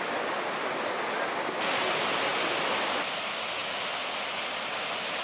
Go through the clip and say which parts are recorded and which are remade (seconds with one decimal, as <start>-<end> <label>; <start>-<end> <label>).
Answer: 0.0-5.2 recorded